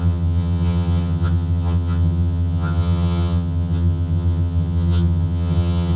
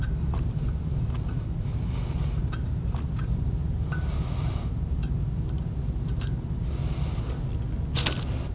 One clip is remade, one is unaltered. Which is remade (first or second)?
first